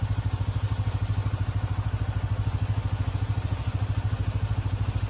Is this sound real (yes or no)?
yes